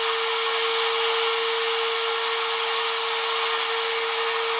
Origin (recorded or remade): recorded